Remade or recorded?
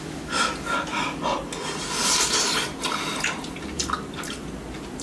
recorded